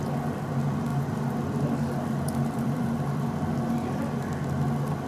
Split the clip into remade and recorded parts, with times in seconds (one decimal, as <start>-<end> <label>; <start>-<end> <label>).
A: 0.0-0.9 recorded; 0.9-4.0 remade; 4.0-5.1 recorded